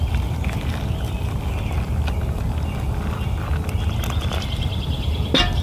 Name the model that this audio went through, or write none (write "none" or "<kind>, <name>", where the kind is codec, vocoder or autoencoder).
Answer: none